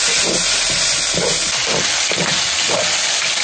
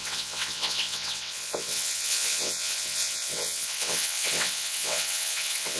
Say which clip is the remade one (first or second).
second